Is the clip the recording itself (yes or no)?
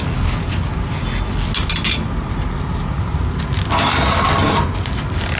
yes